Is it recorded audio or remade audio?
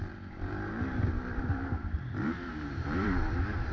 remade